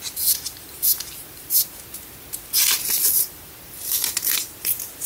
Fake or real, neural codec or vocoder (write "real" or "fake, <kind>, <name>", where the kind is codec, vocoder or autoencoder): real